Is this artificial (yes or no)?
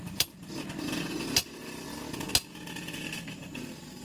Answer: no